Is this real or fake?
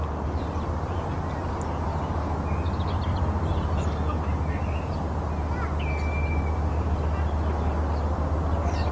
real